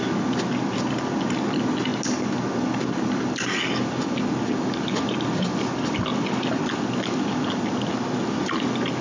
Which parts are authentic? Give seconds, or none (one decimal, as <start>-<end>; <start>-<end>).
0.0-9.0

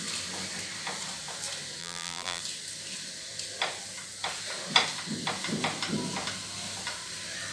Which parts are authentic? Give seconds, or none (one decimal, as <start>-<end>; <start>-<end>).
0.0-1.8; 2.4-7.5

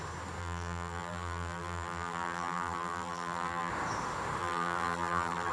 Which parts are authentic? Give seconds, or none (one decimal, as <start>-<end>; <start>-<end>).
0.0-0.4; 3.7-4.4

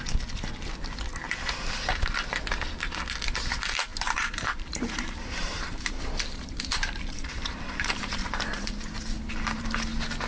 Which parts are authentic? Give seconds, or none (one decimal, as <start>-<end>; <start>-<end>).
0.0-3.9; 8.9-10.3